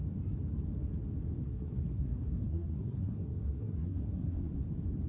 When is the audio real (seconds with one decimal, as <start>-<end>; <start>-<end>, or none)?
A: 0.0-1.4; 4.5-5.1

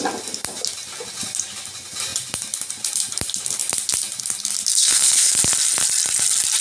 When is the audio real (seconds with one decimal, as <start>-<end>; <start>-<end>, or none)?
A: 0.0-4.7; 5.4-6.6

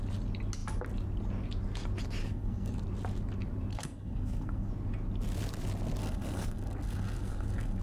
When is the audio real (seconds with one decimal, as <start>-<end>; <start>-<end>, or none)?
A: 0.0-2.2; 2.8-3.7; 4.7-6.0

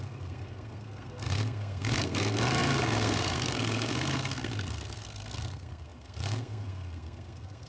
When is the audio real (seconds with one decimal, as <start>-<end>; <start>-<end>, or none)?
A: none

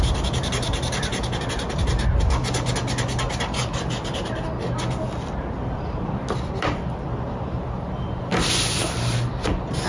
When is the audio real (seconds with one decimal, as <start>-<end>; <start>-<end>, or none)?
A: 0.0-9.9

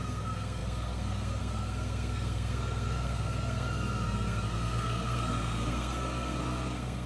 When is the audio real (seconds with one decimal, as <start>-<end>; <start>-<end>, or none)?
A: none

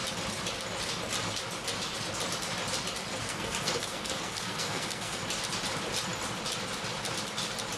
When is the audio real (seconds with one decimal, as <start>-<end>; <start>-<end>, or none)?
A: 0.0-3.2; 5.2-7.8